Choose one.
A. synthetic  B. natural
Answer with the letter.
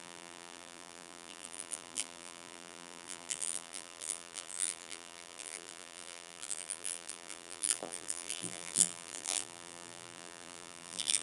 A